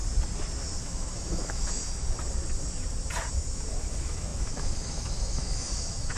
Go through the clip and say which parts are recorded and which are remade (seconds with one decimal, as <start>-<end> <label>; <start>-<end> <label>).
0.0-0.8 recorded; 0.8-1.8 remade; 1.8-3.8 recorded; 3.8-6.2 remade